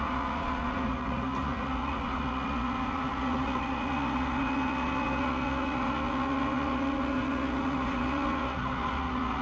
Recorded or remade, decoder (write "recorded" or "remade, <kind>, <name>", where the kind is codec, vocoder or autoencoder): remade, vocoder, Vocos